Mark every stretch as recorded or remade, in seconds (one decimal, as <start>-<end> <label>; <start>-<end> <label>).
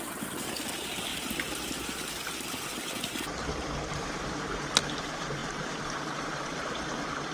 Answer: 0.0-7.3 recorded